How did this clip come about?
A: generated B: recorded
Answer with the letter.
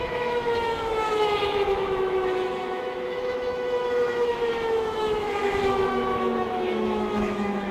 A